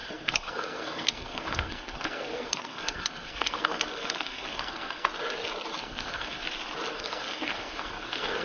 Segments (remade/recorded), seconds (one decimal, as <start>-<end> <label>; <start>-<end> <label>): 0.0-5.1 remade; 5.1-5.8 recorded; 5.8-6.4 remade; 6.4-6.9 recorded; 6.9-8.4 remade